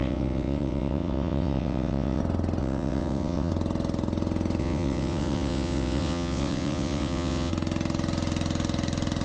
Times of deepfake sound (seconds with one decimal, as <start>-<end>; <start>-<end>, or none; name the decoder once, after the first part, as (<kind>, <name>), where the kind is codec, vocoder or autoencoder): 0.0-2.2 (vocoder, WaveNeXt); 2.6-3.5; 4.6-7.5